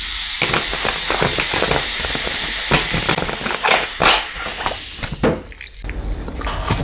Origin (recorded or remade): recorded